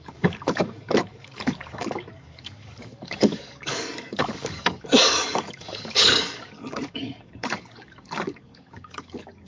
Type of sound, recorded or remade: remade